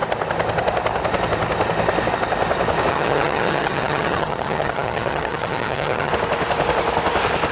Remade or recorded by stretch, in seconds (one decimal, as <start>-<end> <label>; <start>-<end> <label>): 0.0-2.9 recorded; 2.9-6.1 remade; 6.1-7.5 recorded